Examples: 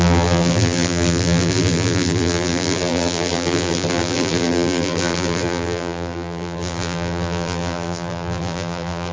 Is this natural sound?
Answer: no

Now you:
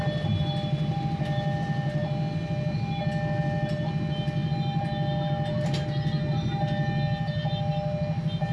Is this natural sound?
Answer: yes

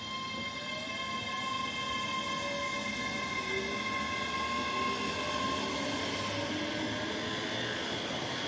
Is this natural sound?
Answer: yes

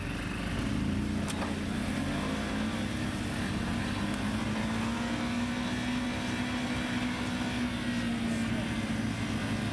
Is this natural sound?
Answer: yes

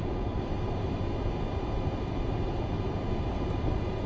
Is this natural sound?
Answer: yes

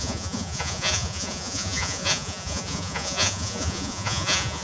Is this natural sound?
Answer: no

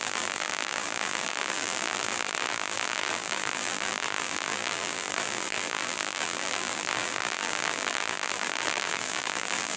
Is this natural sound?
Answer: no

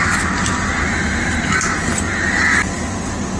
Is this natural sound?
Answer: yes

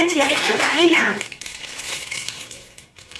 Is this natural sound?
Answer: no